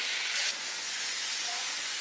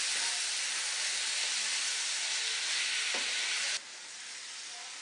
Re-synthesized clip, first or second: first